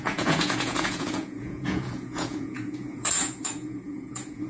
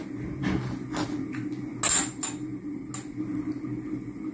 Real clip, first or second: second